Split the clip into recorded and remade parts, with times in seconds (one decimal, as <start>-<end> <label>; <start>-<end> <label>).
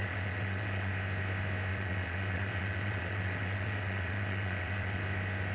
0.0-0.9 remade; 0.9-1.7 recorded; 1.7-5.0 remade; 5.0-5.5 recorded